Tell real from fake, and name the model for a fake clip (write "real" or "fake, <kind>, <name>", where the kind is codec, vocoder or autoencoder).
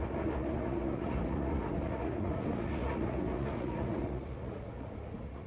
fake, vocoder, Vocos